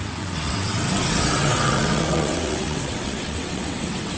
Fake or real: fake